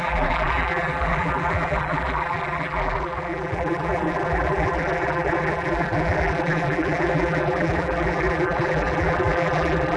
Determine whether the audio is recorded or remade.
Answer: remade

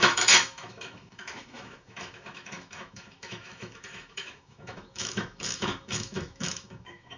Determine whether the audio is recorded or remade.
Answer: remade